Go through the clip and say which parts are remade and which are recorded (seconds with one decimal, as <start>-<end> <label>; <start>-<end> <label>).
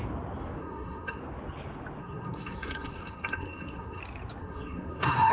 0.0-0.6 recorded; 0.6-1.2 remade; 1.2-2.0 recorded; 2.0-4.0 remade; 4.0-4.4 recorded; 4.4-5.3 remade